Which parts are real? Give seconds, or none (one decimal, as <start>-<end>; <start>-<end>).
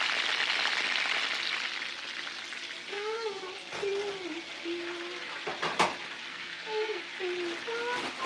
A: 0.0-2.9; 3.5-6.3; 7.0-8.3